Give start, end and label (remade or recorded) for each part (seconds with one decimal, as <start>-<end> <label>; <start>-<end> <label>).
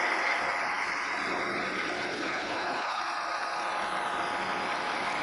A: 0.0-2.1 recorded; 2.1-3.0 remade; 3.0-5.2 recorded